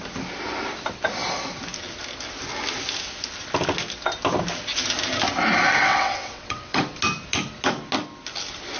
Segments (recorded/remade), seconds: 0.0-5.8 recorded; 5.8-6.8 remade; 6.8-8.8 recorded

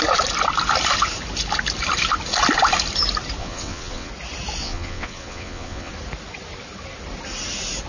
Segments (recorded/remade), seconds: 0.0-3.4 recorded; 3.4-4.1 remade; 4.1-4.6 recorded; 4.6-5.9 remade; 5.9-7.9 recorded